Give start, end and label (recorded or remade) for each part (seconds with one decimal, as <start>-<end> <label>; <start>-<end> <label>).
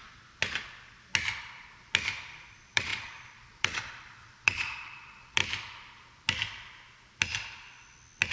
0.0-2.5 recorded; 2.5-5.4 remade; 5.4-8.3 recorded